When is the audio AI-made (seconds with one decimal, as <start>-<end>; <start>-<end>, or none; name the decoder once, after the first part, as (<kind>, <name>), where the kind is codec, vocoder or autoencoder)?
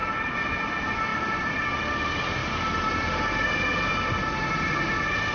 1.1-1.7 (vocoder, BigVGAN v2); 2.4-3.6